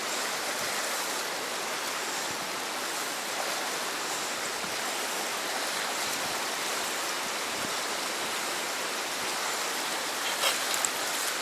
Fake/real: real